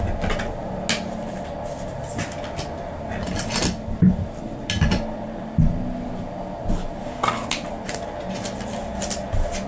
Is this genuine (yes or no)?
yes